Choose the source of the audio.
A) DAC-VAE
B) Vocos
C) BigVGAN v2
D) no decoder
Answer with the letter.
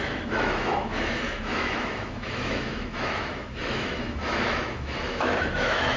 A